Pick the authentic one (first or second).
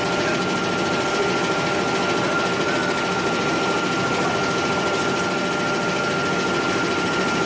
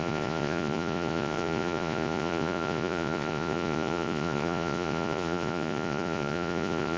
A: first